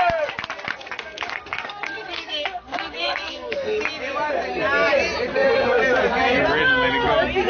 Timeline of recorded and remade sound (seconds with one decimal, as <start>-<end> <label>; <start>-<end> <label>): 0.0-0.7 recorded; 0.7-3.8 remade; 3.8-5.3 recorded; 5.3-5.8 remade; 5.8-7.5 recorded